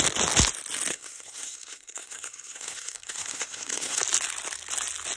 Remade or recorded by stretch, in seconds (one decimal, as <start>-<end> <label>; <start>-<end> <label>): 0.0-0.9 recorded; 0.9-4.0 remade; 4.0-5.2 recorded